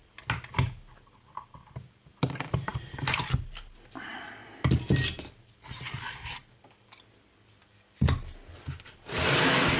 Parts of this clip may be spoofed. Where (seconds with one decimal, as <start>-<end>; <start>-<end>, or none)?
none